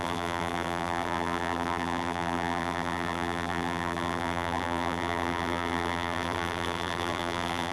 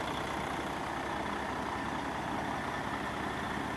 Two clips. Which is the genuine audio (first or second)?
second